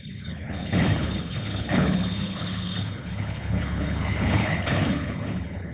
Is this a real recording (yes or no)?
no